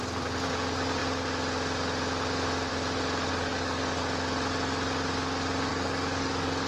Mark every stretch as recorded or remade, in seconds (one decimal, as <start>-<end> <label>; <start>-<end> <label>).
0.0-3.3 recorded; 3.3-4.0 remade; 4.0-5.7 recorded; 5.7-6.7 remade